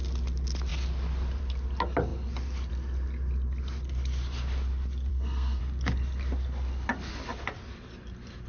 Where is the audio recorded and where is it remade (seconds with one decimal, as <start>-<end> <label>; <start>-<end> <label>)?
0.0-5.1 recorded; 5.1-5.6 remade; 5.6-8.5 recorded